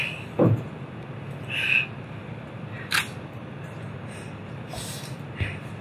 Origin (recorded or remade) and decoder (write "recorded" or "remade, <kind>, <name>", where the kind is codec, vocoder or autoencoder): recorded